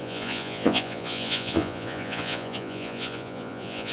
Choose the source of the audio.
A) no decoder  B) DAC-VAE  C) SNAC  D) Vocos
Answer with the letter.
D